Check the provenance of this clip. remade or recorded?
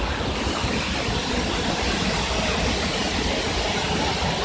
recorded